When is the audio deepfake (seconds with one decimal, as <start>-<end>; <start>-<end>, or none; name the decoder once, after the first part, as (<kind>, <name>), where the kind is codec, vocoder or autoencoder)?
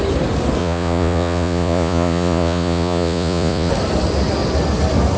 0.6-3.7 (vocoder, Vocos)